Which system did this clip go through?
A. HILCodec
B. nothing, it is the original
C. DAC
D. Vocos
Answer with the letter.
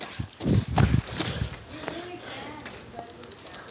B